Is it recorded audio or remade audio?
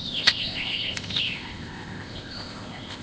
remade